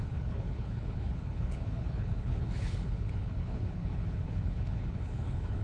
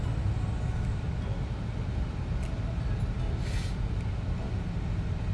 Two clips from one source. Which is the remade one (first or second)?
first